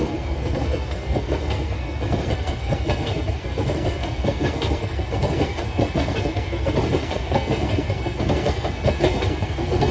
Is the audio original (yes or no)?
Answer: no